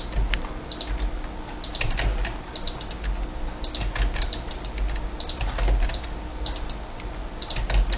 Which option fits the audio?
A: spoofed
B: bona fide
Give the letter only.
B